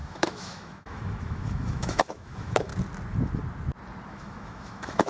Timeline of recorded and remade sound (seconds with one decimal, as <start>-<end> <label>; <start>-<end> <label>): 0.0-2.7 remade; 2.7-4.1 recorded; 4.1-5.1 remade